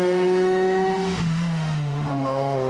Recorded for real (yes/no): no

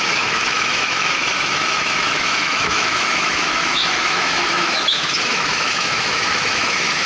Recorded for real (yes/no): no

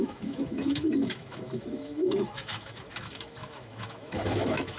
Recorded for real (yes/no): no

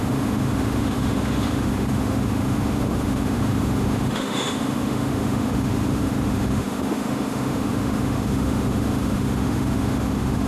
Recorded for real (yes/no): no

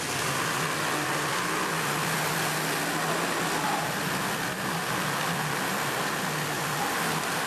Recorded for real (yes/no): yes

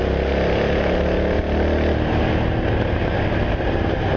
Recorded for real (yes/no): yes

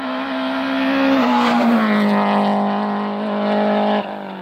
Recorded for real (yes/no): yes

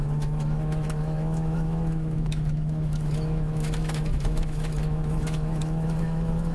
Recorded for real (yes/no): no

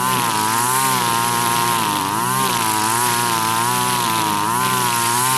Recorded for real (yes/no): yes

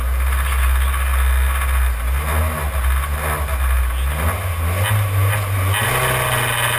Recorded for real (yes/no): yes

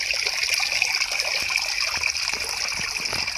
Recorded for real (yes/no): yes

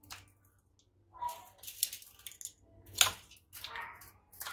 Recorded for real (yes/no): yes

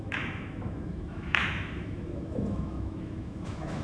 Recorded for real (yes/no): no